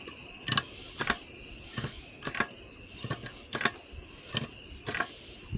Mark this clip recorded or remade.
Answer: recorded